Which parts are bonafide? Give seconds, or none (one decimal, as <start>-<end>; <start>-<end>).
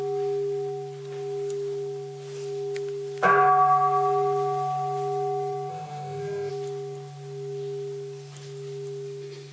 0.0-5.7; 6.5-9.5